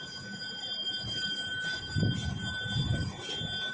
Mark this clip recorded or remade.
recorded